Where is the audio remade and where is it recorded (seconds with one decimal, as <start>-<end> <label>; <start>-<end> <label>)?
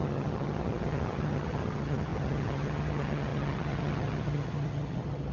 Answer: 0.0-5.3 remade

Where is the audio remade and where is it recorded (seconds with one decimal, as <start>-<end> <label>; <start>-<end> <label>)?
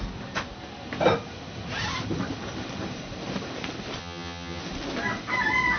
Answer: 0.0-4.0 recorded; 4.0-4.6 remade; 4.6-5.8 recorded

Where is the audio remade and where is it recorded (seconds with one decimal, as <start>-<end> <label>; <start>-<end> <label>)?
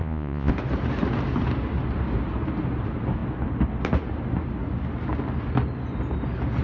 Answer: 0.0-0.5 remade; 0.5-6.6 recorded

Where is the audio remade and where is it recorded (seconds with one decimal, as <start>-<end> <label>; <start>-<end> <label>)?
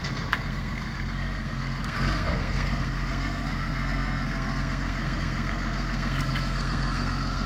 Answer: 0.0-7.5 remade